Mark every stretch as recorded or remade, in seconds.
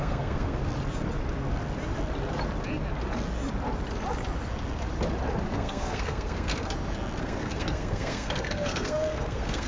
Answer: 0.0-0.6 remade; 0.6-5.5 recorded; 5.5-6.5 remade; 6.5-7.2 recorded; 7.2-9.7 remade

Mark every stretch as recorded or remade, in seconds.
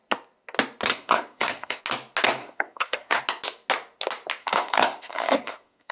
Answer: 0.0-0.9 recorded; 0.9-1.8 remade; 1.8-2.4 recorded; 2.4-3.2 remade; 3.2-4.4 recorded; 4.4-5.9 remade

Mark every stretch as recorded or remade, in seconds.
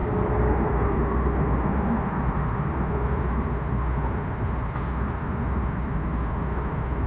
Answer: 0.0-0.5 recorded; 0.5-7.1 remade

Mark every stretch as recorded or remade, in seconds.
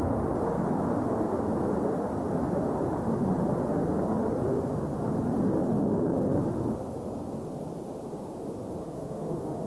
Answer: 0.0-8.8 recorded; 8.8-9.7 remade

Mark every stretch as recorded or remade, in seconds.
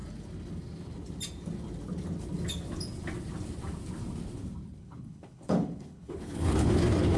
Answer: 0.0-4.8 recorded; 4.8-6.7 remade; 6.7-7.2 recorded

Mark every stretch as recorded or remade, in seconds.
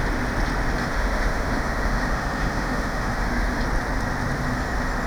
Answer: 0.0-0.8 recorded; 0.8-3.6 remade; 3.6-5.1 recorded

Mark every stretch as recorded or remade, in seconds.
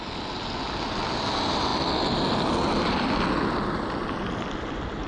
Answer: 0.0-5.1 recorded